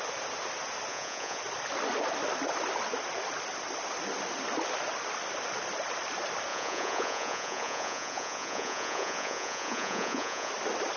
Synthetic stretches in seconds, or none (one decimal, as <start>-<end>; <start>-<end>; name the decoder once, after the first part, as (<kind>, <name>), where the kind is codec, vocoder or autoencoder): 0.9-1.4 (vocoder, Vocos); 6.5-10.5